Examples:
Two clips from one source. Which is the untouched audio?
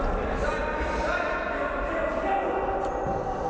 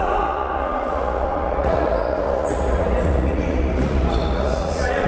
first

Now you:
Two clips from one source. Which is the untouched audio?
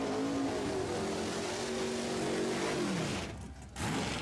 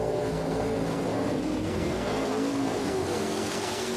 first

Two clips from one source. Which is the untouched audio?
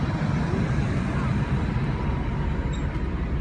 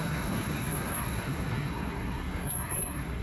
first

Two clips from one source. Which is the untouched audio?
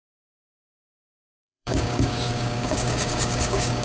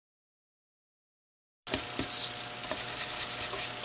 second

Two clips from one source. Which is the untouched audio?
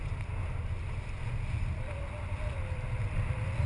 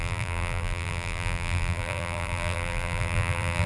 first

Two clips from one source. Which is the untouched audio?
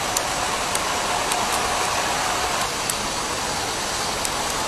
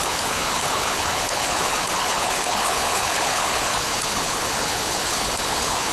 first